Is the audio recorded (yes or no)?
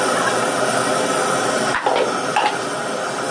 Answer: yes